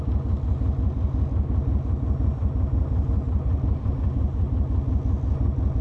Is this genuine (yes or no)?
yes